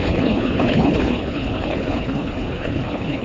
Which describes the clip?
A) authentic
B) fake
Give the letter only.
B